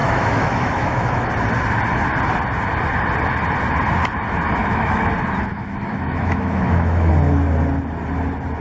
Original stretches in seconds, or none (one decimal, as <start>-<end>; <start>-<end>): 1.3-4.6; 5.1-5.5; 7.1-8.6